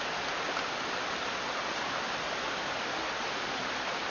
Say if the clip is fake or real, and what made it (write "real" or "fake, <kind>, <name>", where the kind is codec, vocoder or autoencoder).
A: real